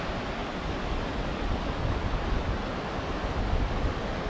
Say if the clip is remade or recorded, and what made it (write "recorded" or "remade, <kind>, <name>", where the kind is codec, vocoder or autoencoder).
recorded